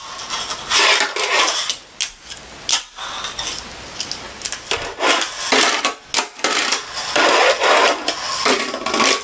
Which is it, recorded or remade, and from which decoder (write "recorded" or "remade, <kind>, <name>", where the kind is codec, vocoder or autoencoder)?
recorded